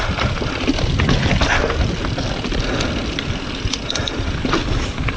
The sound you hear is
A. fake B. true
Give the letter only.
B